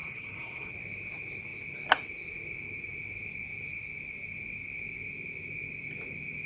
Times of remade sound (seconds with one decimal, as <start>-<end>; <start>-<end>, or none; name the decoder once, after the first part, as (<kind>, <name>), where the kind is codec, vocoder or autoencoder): 0.0-0.7 (codec, HILCodec)

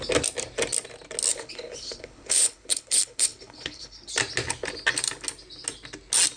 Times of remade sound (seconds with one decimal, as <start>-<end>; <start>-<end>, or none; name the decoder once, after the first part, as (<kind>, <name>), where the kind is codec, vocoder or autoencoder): 1.3-4.1 (codec, HILCodec)

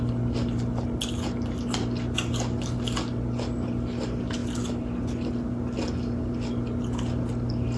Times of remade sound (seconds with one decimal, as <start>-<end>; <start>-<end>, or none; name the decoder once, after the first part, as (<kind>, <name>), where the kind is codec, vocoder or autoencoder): none

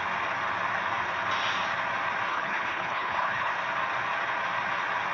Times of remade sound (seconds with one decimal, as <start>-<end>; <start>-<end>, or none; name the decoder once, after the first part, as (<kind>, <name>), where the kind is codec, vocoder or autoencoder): 2.3-3.5 (codec, HILCodec)

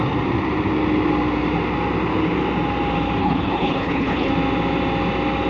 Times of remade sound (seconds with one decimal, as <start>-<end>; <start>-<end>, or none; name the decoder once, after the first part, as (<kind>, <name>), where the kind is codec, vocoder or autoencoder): 3.2-4.3 (codec, HILCodec)

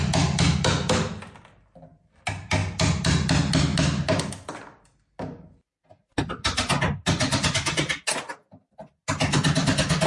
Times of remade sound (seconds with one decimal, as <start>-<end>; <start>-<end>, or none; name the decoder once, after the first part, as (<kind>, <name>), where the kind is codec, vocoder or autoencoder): none

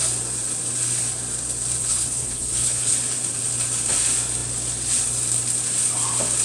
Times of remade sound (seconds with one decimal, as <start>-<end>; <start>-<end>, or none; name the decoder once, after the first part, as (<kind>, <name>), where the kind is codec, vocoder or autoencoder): 1.8-2.9 (codec, HILCodec)

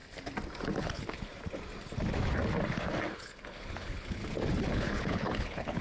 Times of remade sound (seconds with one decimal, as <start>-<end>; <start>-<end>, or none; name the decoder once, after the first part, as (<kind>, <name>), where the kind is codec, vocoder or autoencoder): 0.8-1.3 (codec, HILCodec); 3.1-4.2; 4.7-5.8